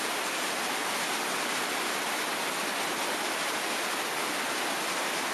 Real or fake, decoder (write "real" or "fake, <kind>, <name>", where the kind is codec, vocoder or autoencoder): real